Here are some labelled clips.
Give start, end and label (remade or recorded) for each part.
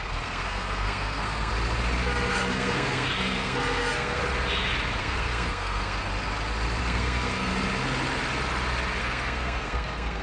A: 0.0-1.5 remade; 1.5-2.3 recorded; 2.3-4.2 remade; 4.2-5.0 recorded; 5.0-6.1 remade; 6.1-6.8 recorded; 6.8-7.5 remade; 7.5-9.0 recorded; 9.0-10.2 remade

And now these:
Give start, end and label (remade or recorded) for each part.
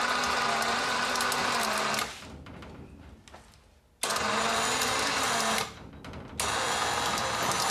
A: 0.0-7.7 recorded